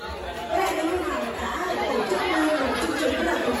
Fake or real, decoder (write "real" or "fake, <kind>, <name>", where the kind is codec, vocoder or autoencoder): real